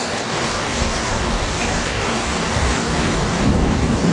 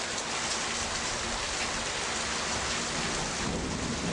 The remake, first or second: first